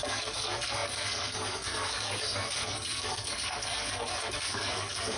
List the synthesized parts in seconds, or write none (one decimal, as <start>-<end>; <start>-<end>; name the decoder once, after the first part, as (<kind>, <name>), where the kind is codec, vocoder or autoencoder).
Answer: 0.0-5.2 (codec, SNAC)